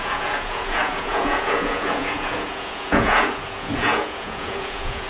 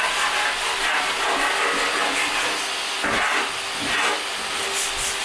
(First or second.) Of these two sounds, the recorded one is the second